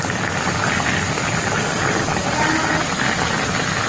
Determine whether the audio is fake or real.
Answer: real